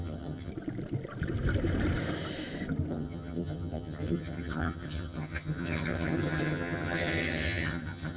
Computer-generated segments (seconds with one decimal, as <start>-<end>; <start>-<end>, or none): 0.0-0.5; 2.9-8.2